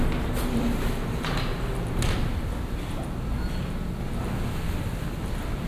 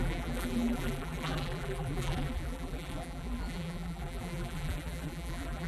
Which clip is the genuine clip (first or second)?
first